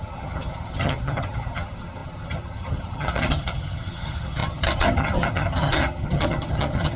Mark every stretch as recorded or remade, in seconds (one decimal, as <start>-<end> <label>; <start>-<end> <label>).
0.0-7.0 remade